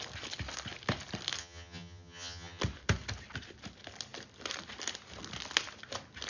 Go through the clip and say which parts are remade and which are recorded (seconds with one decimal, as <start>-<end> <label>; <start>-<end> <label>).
0.0-1.4 recorded; 1.4-2.6 remade; 2.6-6.3 recorded

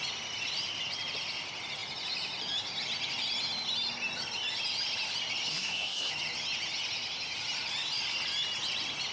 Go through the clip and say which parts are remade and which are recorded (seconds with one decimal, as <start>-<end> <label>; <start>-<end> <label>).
0.0-5.5 recorded; 5.5-6.1 remade; 6.1-9.1 recorded